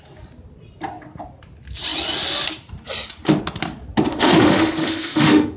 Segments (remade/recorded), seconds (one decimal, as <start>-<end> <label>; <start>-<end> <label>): 0.0-4.1 recorded; 4.1-5.6 remade